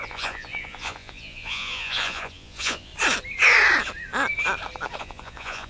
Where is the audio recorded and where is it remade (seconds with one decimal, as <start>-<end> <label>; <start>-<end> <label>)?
0.0-2.9 remade; 2.9-5.0 recorded; 5.0-5.7 remade